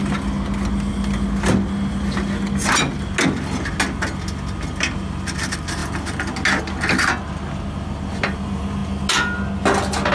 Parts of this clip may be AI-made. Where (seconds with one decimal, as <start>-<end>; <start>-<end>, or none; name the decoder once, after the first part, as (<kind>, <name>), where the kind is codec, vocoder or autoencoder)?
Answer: none